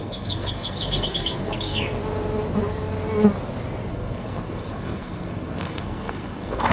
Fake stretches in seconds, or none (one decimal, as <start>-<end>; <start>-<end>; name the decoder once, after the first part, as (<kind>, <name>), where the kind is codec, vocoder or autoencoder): 0.0-2.0 (codec, SNAC); 3.9-6.7